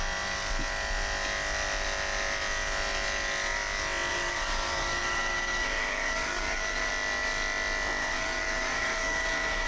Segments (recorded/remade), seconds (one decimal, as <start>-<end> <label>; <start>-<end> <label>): 0.0-4.1 recorded; 4.1-6.9 remade; 6.9-8.0 recorded; 8.0-9.7 remade